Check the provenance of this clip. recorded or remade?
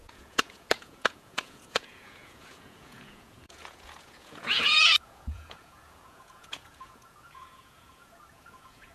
remade